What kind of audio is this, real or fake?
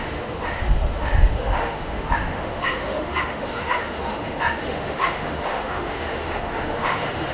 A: fake